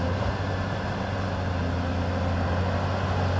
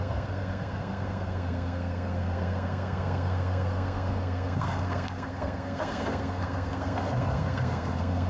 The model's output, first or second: second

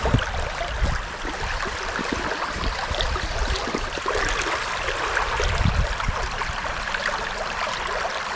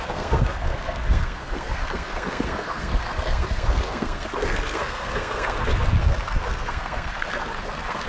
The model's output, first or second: second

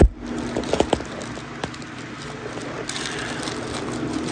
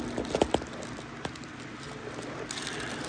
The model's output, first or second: second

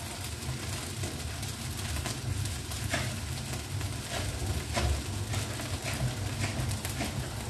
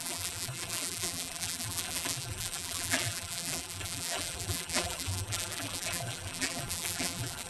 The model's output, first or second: second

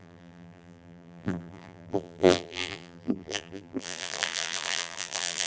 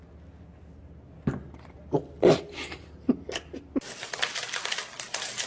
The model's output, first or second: first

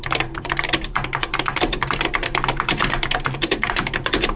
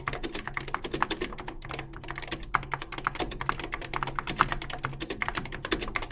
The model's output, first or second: first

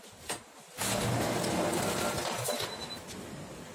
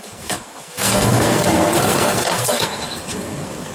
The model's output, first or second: second